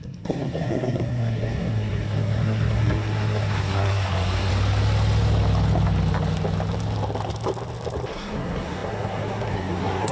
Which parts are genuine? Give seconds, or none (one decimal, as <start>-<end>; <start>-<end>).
4.5-8.1